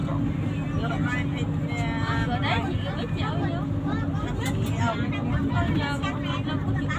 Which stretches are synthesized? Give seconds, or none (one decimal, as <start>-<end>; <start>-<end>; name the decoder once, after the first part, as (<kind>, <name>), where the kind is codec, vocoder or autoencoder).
none